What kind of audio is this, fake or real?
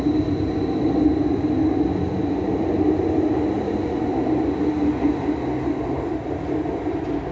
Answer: real